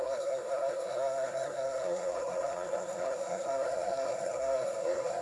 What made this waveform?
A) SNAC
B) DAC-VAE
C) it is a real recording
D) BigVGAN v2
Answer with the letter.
A